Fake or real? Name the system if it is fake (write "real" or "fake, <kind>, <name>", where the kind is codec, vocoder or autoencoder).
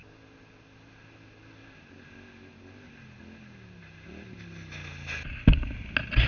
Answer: real